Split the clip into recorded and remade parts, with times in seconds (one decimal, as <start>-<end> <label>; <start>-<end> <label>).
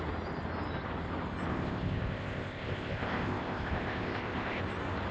0.0-1.5 recorded; 1.5-4.6 remade; 4.6-5.1 recorded